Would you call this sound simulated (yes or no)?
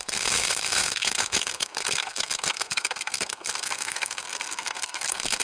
yes